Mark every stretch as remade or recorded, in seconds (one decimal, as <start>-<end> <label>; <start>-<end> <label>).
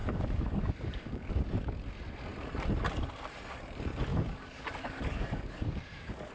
0.0-1.3 remade; 1.3-4.1 recorded; 4.1-6.3 remade